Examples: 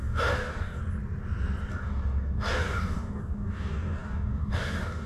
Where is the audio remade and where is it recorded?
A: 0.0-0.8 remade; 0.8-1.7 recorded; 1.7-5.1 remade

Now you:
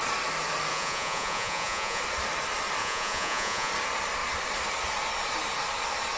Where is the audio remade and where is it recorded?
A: 0.0-0.7 recorded; 0.7-2.0 remade; 2.0-2.8 recorded; 2.8-3.7 remade; 3.7-6.2 recorded

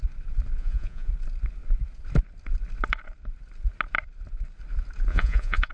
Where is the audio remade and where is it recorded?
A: 0.0-0.6 recorded; 0.6-1.1 remade; 1.1-5.1 recorded; 5.1-5.7 remade

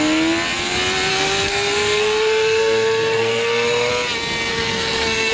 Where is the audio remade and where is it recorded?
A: 0.0-1.1 recorded; 1.1-3.9 remade; 3.9-4.5 recorded; 4.5-5.3 remade

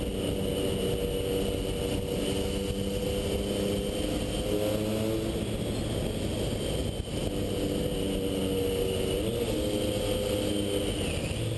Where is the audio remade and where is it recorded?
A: 0.0-11.6 recorded

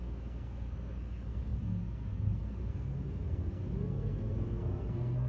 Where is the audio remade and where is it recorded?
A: 0.0-5.3 remade